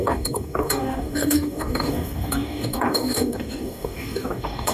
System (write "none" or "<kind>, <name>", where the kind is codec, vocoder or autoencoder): codec, DAC